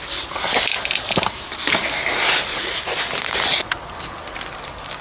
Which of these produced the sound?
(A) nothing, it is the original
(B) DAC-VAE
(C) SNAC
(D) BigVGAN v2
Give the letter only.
A